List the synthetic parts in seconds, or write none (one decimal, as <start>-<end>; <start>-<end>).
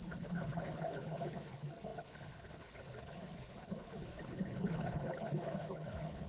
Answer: 0.0-6.3